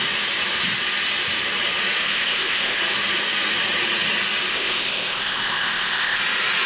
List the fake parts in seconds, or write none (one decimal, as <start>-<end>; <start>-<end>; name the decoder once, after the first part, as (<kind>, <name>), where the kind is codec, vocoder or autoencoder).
2.0-2.8 (codec, ZipCodec); 4.5-6.2